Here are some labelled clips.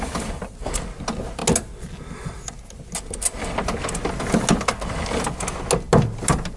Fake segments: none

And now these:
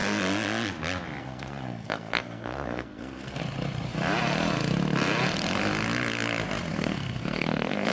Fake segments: 1.2-3.4 (codec, SNAC); 6.7-7.9

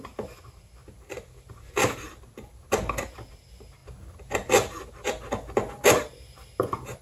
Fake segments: none

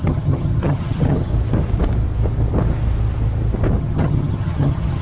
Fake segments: 0.0-1.3 (vocoder, HiFi-GAN); 3.8-5.0

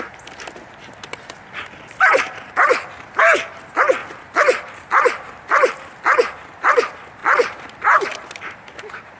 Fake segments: 4.0-5.7 (vocoder, BigVGAN v2); 7.2-8.6

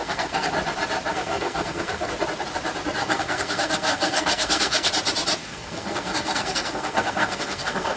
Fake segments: 0.0-0.5 (codec, SNAC); 1.1-2.1; 3.0-4.9; 5.4-8.0